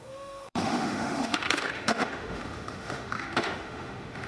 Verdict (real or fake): fake